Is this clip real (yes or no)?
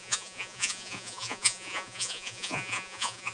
no